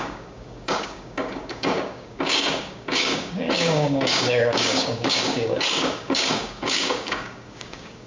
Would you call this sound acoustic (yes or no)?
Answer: no